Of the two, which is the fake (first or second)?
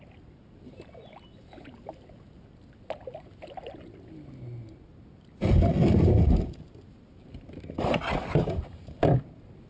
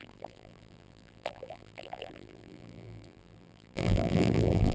second